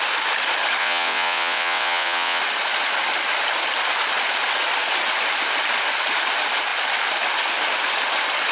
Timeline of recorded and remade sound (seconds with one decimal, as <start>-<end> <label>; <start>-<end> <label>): 0.0-0.8 recorded; 0.8-2.4 remade; 2.4-8.5 recorded